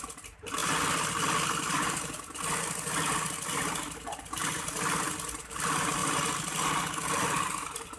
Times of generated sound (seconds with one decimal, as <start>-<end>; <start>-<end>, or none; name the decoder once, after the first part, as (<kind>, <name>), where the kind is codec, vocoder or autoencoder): none